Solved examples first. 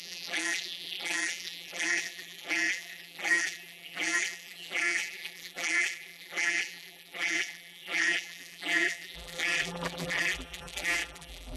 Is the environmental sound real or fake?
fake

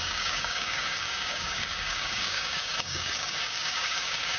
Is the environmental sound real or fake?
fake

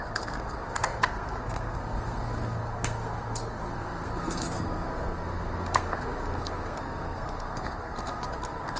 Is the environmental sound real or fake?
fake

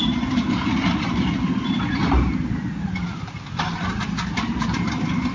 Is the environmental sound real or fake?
fake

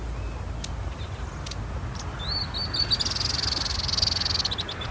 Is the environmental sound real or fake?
real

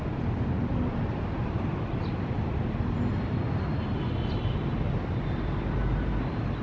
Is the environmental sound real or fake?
real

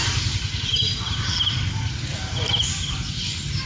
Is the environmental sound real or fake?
real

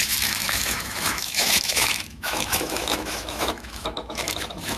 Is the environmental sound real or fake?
fake